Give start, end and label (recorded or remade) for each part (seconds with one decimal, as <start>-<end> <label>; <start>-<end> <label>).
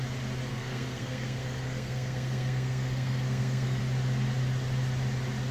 0.0-0.5 recorded; 0.5-3.8 remade; 3.8-5.5 recorded